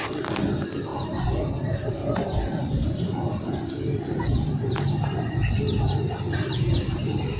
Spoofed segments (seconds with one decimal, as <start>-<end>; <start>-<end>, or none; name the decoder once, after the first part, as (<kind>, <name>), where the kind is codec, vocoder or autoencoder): 0.9-5.3 (vocoder, BigVGAN v2)